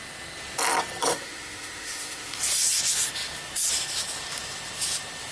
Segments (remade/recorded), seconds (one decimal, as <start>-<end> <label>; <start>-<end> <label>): 0.0-1.1 recorded; 1.1-2.4 remade; 2.4-5.3 recorded